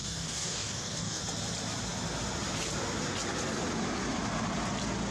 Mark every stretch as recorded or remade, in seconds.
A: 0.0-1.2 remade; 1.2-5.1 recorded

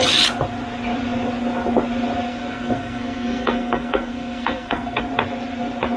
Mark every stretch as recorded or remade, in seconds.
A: 0.0-2.3 recorded; 2.3-5.0 remade; 5.0-6.0 recorded

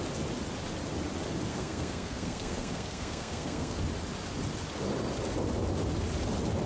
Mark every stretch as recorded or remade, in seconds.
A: 0.0-1.5 recorded; 1.5-3.8 remade; 3.8-6.7 recorded

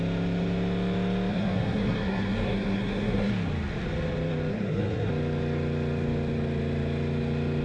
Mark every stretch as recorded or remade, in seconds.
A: 0.0-1.3 recorded; 1.3-3.3 remade; 3.3-4.5 recorded; 4.5-5.1 remade; 5.1-7.6 recorded

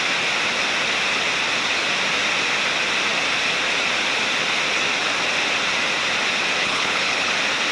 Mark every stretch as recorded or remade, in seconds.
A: 0.0-6.6 recorded; 6.6-7.3 remade; 7.3-7.7 recorded